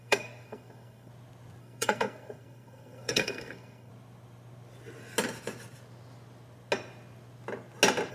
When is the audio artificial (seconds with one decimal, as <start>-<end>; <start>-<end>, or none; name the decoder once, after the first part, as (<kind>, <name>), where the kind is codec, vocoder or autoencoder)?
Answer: 0.0-1.1 (codec, SNAC); 1.6-3.9